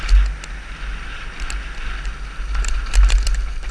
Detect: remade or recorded recorded